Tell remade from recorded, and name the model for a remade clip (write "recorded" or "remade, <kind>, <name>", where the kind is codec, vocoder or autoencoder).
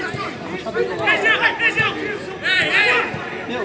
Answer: recorded